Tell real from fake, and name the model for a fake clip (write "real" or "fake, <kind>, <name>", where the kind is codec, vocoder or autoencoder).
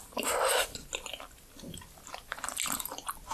real